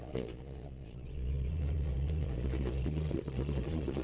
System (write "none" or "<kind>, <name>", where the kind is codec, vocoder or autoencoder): vocoder, Vocos